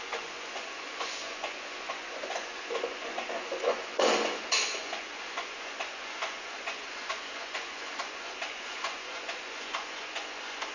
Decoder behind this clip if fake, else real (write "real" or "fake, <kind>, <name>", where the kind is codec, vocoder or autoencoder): fake, vocoder, Vocos